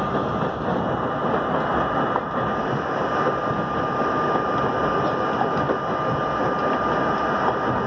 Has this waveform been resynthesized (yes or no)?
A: no